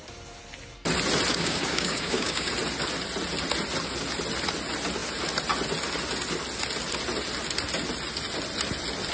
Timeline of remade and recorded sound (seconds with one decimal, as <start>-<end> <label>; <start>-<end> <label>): 0.0-1.3 recorded; 1.3-2.5 remade; 2.5-9.1 recorded